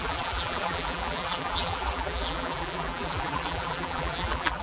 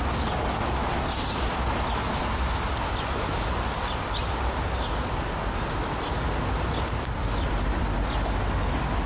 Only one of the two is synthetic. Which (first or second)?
first